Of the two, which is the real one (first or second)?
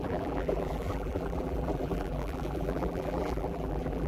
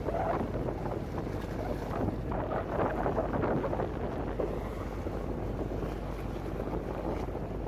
second